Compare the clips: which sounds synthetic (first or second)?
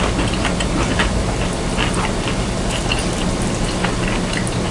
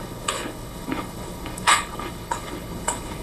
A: second